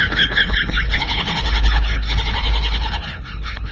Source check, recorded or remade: remade